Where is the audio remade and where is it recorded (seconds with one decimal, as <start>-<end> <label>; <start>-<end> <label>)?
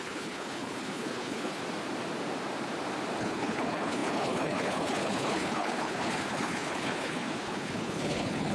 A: 0.0-1.6 remade; 1.6-3.2 recorded; 3.2-8.5 remade